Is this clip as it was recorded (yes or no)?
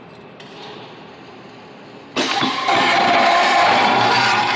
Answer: yes